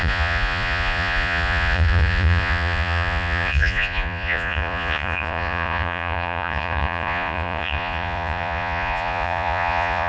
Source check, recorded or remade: remade